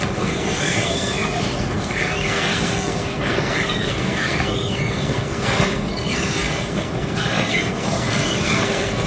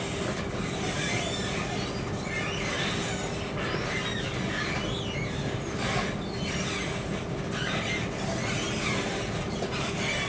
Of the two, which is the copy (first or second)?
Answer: first